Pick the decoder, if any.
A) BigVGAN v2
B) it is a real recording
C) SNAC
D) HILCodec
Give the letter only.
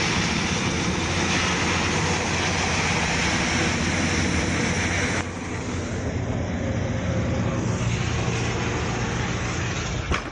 B